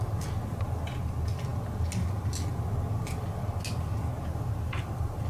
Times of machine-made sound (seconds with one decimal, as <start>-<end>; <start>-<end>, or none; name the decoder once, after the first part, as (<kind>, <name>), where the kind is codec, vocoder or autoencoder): none